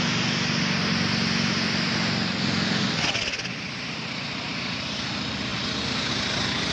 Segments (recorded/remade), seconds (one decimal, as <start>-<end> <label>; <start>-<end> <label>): 0.0-6.7 recorded